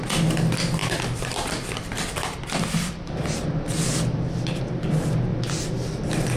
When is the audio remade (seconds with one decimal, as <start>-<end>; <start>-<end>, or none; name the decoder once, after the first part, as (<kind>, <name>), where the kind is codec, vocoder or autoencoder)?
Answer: 0.8-4.6 (vocoder, BigVGAN v2)